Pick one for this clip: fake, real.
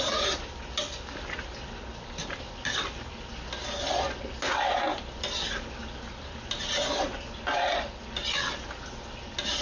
real